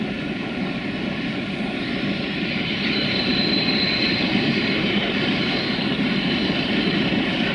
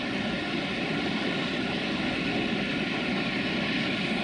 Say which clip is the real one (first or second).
second